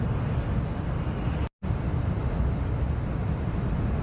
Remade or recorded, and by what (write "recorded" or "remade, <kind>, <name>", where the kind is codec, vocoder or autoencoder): recorded